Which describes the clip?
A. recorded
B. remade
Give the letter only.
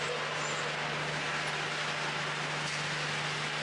A